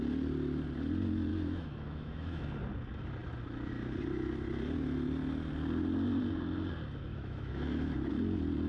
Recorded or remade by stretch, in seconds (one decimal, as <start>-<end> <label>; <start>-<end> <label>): 0.0-1.3 recorded; 1.3-2.4 remade; 2.4-7.1 recorded; 7.1-8.1 remade; 8.1-8.7 recorded